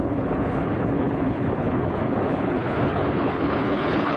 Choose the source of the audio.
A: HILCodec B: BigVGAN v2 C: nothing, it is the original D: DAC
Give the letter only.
A